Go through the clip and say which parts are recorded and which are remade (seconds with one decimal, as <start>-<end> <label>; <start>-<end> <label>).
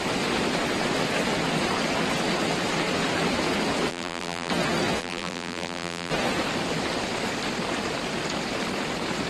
0.0-3.9 recorded; 3.9-4.5 remade; 4.5-5.0 recorded; 5.0-6.1 remade; 6.1-9.3 recorded